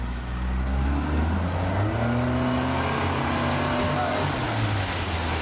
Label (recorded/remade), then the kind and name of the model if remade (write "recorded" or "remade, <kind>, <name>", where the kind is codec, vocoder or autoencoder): recorded